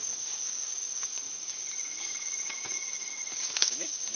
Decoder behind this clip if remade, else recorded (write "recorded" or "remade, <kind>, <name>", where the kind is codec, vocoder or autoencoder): remade, codec, DAC